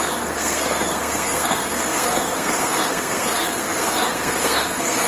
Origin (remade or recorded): remade